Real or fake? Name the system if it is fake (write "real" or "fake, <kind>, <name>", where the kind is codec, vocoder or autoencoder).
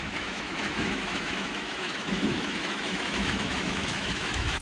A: fake, autoencoder, DAC-VAE